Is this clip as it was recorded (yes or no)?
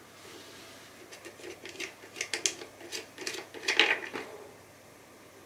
yes